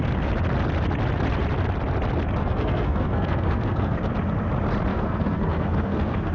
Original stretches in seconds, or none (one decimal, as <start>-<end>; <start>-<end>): 0.0-2.4; 4.0-4.9